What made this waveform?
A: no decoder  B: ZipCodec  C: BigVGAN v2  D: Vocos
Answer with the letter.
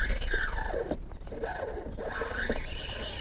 C